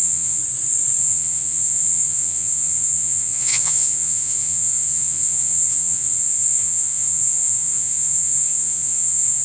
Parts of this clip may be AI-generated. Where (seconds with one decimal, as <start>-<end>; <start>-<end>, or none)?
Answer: 0.0-0.4; 1.0-9.4